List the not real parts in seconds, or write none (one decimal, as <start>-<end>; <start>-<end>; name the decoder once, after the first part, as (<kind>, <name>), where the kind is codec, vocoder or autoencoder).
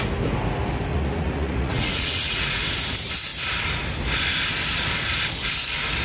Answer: 0.9-2.6 (vocoder, Vocos)